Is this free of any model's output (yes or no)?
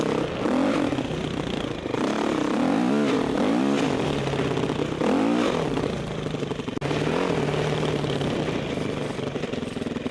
yes